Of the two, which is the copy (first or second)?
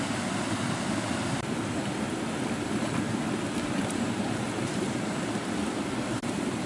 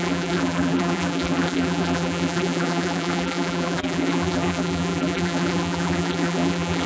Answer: second